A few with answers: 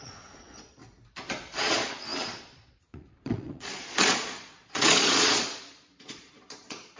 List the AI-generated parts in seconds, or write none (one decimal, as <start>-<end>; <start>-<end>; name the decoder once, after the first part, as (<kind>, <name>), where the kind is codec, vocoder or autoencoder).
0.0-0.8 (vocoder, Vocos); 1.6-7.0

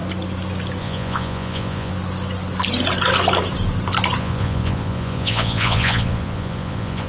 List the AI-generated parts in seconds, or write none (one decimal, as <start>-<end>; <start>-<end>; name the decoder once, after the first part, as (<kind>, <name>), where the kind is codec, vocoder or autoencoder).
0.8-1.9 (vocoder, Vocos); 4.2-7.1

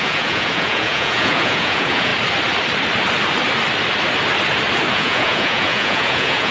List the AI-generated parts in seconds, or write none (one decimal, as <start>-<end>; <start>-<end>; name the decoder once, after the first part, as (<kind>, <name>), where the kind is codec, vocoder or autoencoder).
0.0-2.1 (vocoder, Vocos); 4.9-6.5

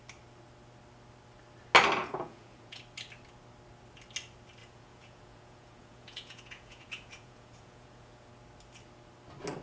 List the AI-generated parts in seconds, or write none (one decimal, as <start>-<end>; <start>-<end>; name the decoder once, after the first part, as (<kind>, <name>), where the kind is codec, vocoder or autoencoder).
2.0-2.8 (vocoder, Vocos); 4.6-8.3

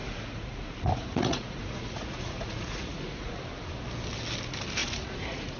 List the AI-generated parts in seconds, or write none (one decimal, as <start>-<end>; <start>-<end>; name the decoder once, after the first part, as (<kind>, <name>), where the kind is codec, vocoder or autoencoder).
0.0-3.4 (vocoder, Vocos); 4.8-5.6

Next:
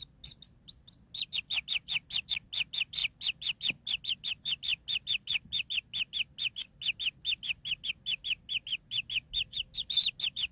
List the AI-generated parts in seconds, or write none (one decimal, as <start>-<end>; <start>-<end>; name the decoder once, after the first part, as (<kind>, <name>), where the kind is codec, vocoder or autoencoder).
none

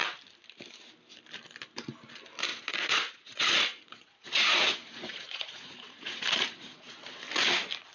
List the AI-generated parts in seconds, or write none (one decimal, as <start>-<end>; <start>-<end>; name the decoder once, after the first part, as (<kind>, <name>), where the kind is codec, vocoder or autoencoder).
2.5-7.2 (vocoder, Vocos)